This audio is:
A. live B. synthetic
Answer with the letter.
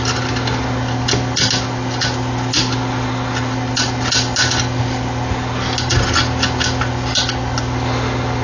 A